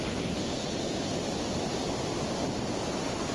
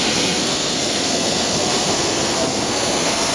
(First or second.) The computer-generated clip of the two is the second